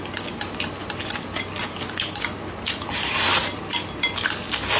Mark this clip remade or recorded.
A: recorded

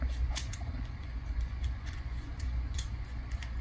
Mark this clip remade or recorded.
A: remade